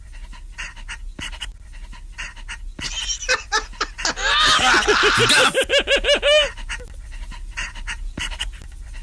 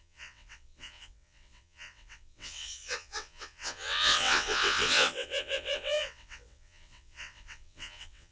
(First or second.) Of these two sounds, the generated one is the second